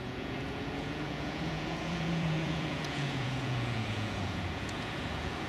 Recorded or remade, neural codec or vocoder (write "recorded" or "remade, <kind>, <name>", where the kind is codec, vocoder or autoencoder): remade, vocoder, Vocos